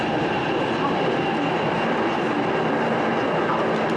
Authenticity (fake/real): real